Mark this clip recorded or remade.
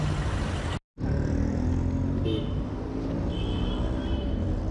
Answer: recorded